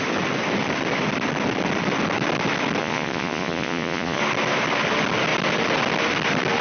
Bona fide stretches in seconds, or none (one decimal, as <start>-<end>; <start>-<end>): 0.0-2.8; 4.2-6.6